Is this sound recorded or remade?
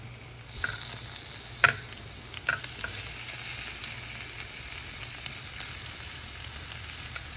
recorded